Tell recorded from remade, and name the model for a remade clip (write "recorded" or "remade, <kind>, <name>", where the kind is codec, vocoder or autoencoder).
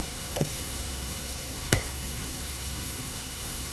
remade, codec, SNAC